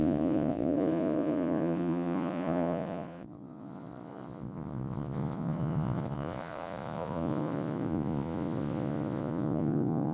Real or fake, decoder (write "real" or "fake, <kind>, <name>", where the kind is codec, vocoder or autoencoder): fake, vocoder, Vocos